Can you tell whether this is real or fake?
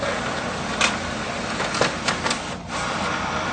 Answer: fake